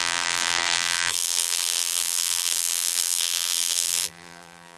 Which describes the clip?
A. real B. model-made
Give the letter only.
B